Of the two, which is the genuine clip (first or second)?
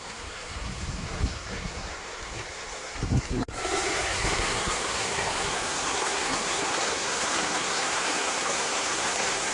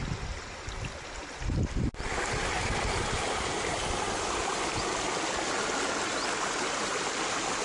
second